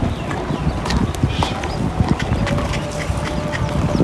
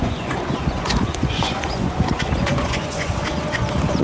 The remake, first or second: second